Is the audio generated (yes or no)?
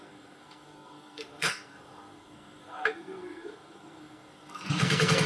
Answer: yes